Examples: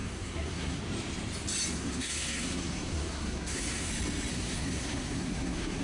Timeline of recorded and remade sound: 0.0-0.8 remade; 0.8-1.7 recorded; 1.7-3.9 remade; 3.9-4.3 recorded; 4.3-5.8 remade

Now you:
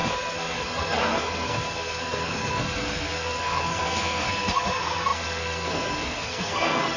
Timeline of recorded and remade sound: 0.0-7.0 remade

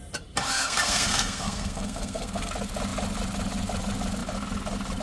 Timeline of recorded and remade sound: 0.0-0.5 recorded; 0.5-2.5 remade; 2.5-5.0 recorded

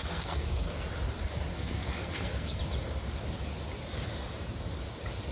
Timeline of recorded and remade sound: 0.0-0.9 remade; 0.9-1.5 recorded; 1.5-2.6 remade; 2.6-5.3 recorded

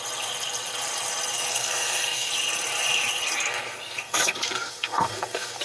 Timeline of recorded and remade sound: 0.0-1.5 recorded; 1.5-2.3 remade; 2.3-3.5 recorded; 3.5-5.6 remade

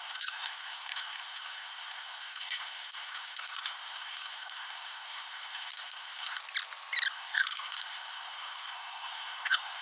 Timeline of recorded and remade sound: 0.0-6.4 remade; 6.4-7.1 recorded; 7.1-9.8 remade